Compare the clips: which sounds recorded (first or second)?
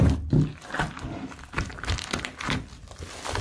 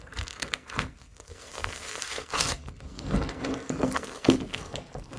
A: first